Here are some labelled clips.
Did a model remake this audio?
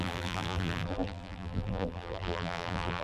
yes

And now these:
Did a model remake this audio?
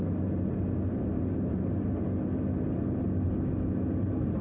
no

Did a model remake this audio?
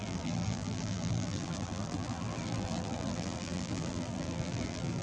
yes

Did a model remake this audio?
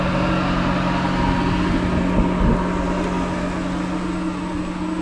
no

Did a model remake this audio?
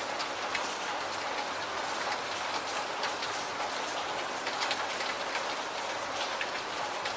no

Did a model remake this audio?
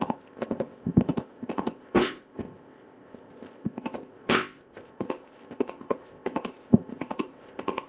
yes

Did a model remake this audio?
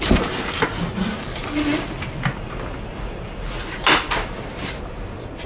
no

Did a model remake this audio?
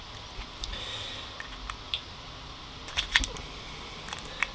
no